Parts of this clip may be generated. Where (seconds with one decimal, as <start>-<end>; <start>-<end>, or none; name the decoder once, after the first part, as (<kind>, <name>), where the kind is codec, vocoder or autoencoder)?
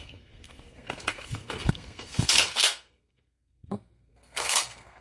0.0-5.0 (codec, SNAC)